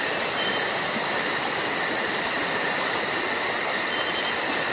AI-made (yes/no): no